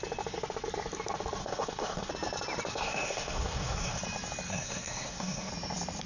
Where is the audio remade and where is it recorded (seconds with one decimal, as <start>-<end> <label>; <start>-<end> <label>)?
0.0-1.4 recorded; 1.4-2.1 remade; 2.1-2.7 recorded; 2.7-4.0 remade; 4.0-4.5 recorded; 4.5-5.5 remade; 5.5-6.1 recorded

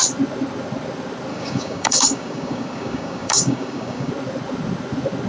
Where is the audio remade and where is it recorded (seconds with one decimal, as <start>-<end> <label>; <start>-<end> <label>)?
0.0-1.3 recorded; 1.3-4.1 remade; 4.1-5.3 recorded

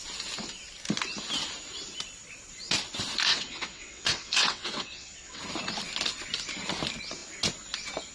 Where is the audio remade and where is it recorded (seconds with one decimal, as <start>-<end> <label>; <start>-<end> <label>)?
0.0-3.3 recorded; 3.3-5.4 remade; 5.4-8.1 recorded

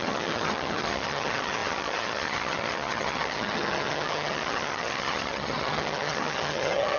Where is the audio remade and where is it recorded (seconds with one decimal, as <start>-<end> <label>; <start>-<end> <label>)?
0.0-7.0 remade

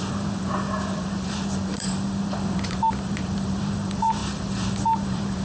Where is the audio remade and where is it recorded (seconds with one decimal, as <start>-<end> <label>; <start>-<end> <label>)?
0.0-5.4 remade

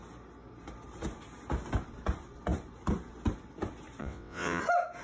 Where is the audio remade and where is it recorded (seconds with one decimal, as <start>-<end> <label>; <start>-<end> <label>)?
0.0-4.0 recorded; 4.0-4.6 remade; 4.6-5.0 recorded

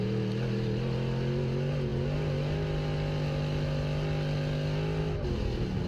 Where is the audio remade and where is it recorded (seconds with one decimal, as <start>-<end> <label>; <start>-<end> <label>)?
0.0-5.9 recorded

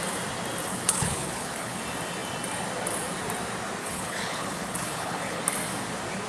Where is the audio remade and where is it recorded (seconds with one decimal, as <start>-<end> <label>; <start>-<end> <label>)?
0.0-0.7 recorded; 0.7-1.8 remade; 1.8-3.8 recorded; 3.8-5.4 remade; 5.4-6.3 recorded